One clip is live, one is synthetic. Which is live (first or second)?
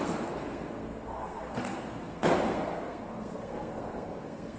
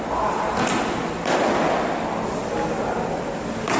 second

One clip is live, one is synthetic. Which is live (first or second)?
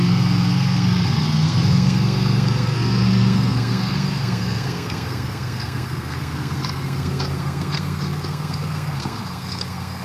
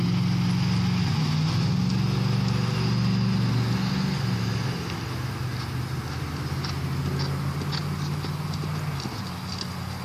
second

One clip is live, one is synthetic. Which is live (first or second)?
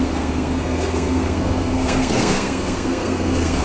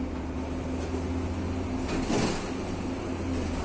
second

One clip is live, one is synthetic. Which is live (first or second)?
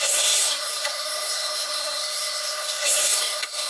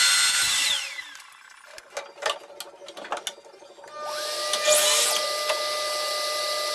second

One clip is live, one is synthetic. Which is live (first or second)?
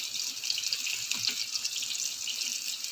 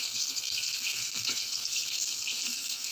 first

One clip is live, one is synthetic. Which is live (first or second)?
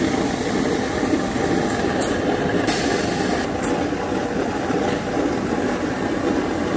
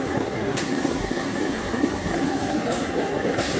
first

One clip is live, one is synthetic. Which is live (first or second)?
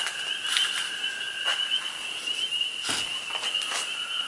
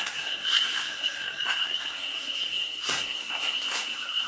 first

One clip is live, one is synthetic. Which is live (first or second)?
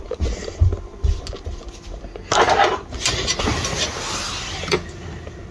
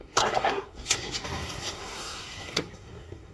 first